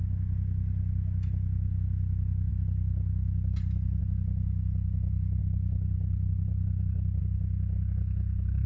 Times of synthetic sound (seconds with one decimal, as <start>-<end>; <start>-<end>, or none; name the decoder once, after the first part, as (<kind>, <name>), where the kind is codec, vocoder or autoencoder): 2.5-4.0 (vocoder, BigVGAN v2); 5.4-7.2